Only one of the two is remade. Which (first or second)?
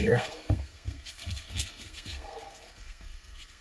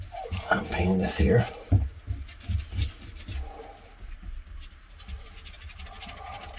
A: first